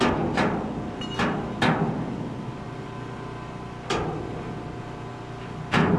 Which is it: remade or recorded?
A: recorded